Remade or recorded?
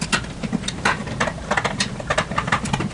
recorded